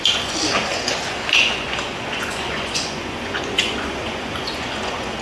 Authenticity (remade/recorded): remade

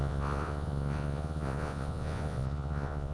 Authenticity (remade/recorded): remade